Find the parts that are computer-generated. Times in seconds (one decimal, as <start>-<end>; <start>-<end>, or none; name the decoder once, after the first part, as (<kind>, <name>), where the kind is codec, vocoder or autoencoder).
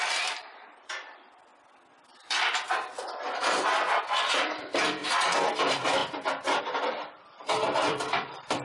0.0-1.5 (vocoder, BigVGAN v2); 4.0-5.0; 5.6-6.0; 6.6-8.6